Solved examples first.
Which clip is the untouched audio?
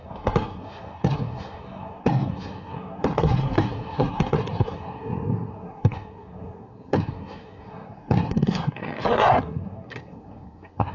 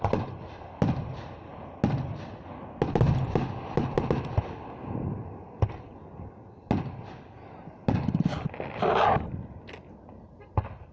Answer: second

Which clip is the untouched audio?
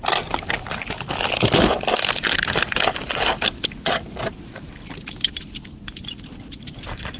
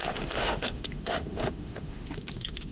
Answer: first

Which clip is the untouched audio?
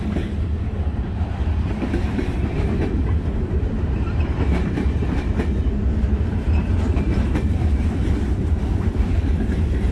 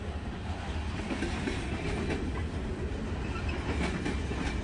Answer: second